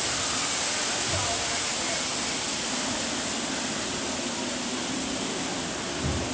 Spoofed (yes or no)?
no